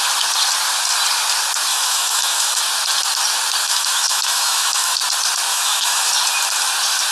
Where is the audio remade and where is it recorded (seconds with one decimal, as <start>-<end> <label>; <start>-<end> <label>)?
0.0-1.7 recorded; 1.7-2.6 remade; 2.6-3.6 recorded; 3.6-5.0 remade; 5.0-5.5 recorded; 5.5-6.1 remade; 6.1-7.1 recorded